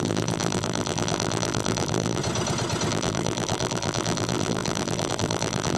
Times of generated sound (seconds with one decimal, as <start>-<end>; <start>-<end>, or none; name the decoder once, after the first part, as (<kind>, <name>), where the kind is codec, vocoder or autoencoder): 0.0-2.2 (vocoder, BigVGAN v2); 2.9-5.8

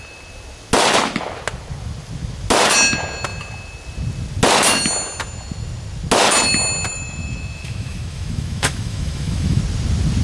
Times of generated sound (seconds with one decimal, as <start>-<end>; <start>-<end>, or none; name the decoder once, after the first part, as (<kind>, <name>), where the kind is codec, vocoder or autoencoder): 6.9-9.6 (autoencoder, DAC-VAE)